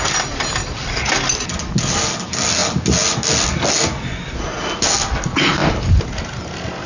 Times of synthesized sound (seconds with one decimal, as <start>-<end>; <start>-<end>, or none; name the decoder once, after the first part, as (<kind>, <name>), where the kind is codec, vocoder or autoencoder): none